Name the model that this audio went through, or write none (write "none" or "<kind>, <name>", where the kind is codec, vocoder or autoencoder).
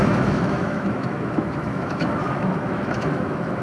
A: autoencoder, DAC-VAE